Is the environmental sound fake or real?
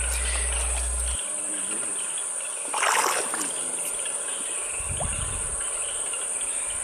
real